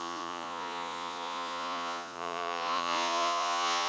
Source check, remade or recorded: remade